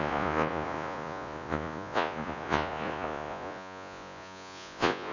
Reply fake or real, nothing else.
fake